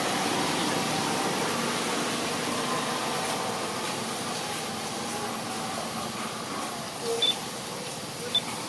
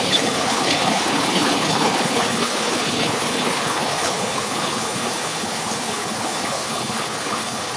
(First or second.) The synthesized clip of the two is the second